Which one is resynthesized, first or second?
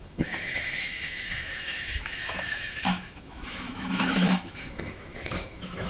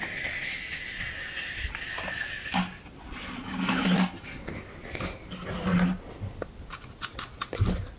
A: first